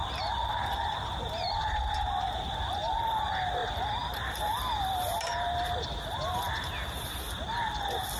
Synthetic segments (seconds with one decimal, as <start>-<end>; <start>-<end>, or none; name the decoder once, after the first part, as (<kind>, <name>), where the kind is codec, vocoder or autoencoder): 0.5-2.4 (vocoder, BigVGAN v2)